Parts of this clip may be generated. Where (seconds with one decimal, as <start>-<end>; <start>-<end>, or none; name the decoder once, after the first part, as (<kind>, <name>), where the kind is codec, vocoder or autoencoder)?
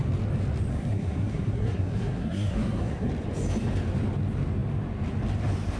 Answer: 0.7-3.1 (codec, SNAC)